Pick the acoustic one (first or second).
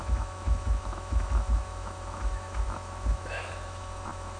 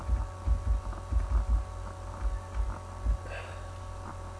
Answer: second